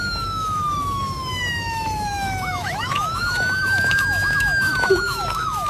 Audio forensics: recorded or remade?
remade